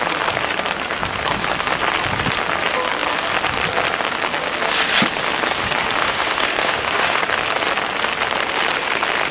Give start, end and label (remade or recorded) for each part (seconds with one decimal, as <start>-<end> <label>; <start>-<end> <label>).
0.0-6.0 recorded; 6.0-7.2 remade; 7.2-9.3 recorded